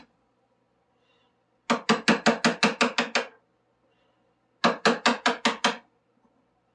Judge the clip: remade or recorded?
recorded